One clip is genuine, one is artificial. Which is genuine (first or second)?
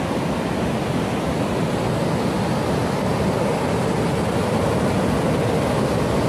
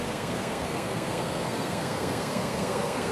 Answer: first